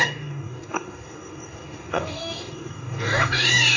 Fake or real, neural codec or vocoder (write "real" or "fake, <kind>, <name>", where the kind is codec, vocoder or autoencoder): fake, codec, DAC